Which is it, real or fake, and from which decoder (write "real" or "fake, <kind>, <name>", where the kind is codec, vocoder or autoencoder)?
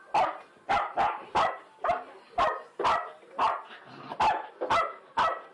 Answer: real